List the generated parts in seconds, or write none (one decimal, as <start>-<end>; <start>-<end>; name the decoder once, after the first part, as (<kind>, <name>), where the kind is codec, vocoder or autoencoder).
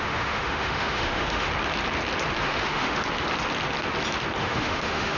0.0-1.5 (autoencoder, DAC-VAE); 2.4-3.0; 4.4-5.2